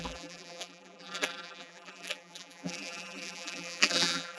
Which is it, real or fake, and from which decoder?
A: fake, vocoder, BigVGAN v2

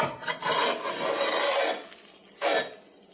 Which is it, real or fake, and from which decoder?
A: real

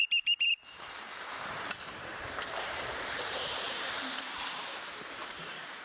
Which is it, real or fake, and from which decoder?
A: fake, vocoder, BigVGAN v2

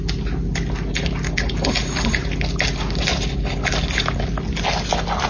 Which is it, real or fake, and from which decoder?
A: real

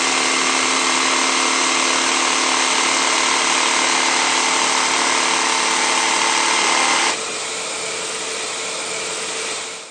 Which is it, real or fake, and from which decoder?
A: real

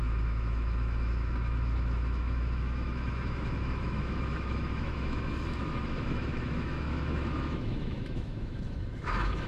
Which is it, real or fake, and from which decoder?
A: fake, autoencoder, DAC-VAE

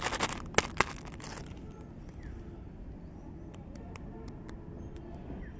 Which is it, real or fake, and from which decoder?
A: real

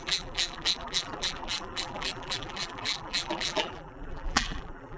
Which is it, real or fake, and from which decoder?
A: fake, vocoder, BigVGAN v2